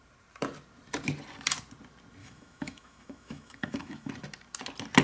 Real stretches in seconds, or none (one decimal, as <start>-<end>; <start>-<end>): 0.0-2.2; 4.1-5.0